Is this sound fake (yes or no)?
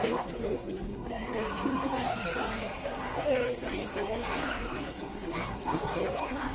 yes